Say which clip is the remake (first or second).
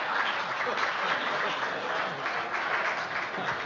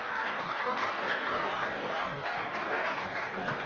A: second